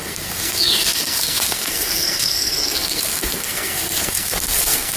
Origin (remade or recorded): remade